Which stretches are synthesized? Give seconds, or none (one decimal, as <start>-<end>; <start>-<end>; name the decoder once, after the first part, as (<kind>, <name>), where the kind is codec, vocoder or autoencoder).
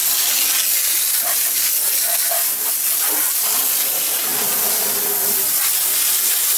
none